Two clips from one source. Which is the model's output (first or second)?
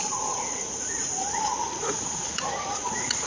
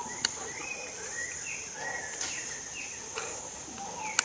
first